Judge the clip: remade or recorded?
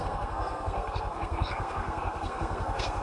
remade